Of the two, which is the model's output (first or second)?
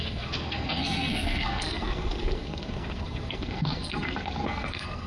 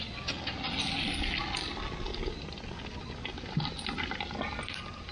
first